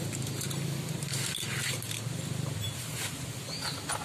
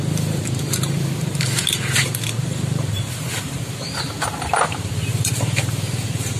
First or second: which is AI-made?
second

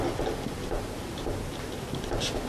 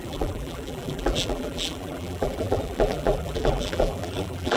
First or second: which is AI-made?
second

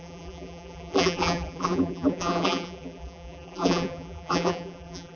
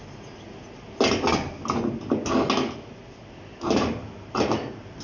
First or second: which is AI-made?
first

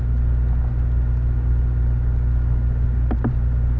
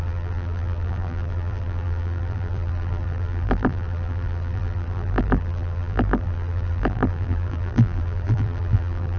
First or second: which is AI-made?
second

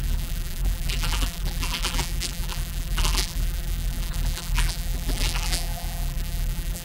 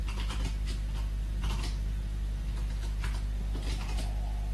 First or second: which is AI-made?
first